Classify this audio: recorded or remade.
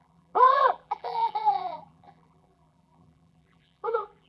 remade